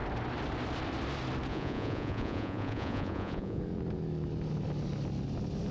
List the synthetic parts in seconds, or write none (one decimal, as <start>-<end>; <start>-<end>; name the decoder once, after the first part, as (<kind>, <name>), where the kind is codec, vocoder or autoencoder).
1.5-3.6 (vocoder, Vocos)